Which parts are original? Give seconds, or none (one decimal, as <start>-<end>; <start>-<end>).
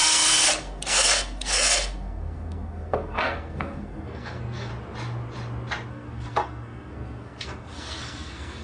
4.7-5.9